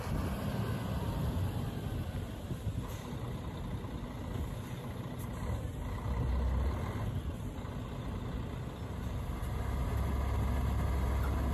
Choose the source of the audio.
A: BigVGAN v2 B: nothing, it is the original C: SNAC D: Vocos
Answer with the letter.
B